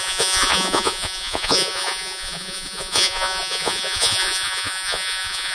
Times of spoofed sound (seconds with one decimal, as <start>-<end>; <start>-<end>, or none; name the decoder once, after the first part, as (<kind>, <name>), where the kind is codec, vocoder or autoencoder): 0.0-5.5 (vocoder, Vocos)

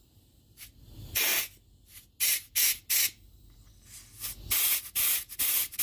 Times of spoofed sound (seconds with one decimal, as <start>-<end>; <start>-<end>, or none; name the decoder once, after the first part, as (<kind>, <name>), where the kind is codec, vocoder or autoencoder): 0.0-1.3 (vocoder, BigVGAN v2); 4.8-5.8

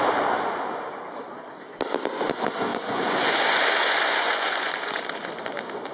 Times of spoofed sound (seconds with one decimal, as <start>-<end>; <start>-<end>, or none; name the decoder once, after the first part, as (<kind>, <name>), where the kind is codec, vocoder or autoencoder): 2.7-5.4 (vocoder, Vocos)

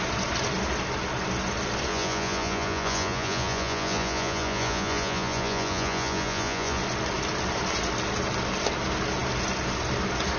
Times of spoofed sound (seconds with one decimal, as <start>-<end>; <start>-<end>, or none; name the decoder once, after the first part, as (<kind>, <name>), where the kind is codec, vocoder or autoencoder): 1.9-6.8 (vocoder, Vocos)

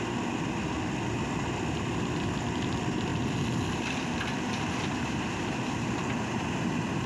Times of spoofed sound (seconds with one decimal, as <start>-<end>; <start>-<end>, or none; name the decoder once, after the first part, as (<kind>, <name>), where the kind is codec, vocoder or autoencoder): 0.0-3.1 (vocoder, BigVGAN v2); 4.9-7.1

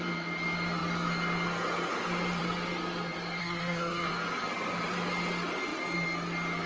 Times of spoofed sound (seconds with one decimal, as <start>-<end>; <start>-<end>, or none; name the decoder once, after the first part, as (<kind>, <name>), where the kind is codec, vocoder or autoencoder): 3.4-4.1 (codec, SNAC)